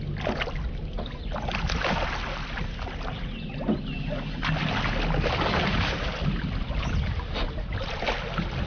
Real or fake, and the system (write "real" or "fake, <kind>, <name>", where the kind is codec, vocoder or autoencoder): real